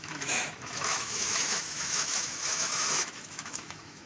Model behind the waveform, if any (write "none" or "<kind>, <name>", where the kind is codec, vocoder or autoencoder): autoencoder, DAC-VAE